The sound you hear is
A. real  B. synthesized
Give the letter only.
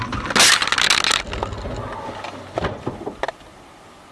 A